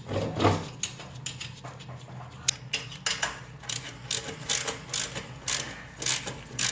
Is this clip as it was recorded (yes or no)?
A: yes